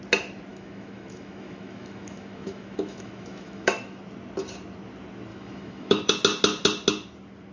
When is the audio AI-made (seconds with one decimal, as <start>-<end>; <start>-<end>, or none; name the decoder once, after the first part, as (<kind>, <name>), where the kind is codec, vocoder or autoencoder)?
0.5-4.0 (autoencoder, DAC-VAE); 5.3-6.1

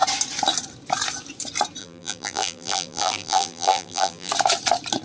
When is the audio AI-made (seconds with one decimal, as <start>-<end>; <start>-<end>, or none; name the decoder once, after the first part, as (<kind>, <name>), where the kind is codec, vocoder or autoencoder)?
1.8-4.3 (vocoder, BigVGAN v2)

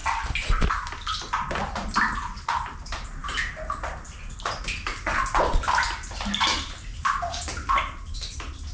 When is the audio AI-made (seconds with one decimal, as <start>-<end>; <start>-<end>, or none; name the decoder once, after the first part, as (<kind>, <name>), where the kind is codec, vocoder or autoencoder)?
none

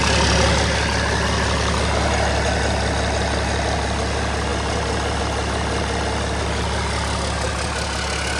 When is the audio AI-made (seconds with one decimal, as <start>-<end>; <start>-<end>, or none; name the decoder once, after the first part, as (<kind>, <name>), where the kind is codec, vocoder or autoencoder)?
none

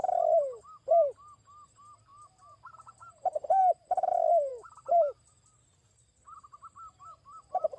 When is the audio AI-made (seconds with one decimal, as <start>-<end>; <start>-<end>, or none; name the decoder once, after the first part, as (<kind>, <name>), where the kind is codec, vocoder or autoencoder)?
4.5-7.8 (vocoder, BigVGAN v2)

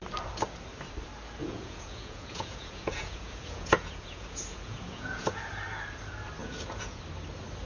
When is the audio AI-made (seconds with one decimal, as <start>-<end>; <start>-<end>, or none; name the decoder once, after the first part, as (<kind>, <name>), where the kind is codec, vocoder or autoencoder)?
1.4-5.4 (vocoder, Vocos); 6.4-7.0

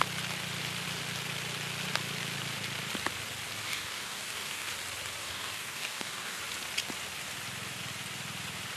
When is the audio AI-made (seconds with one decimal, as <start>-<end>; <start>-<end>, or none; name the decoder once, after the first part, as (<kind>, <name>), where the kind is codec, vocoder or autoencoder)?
3.6-4.7 (codec, DAC); 5.2-6.4

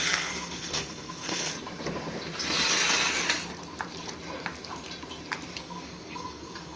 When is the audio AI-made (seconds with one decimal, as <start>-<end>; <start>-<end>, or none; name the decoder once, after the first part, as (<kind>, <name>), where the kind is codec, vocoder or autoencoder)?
0.0-1.5 (codec, SNAC); 5.6-6.8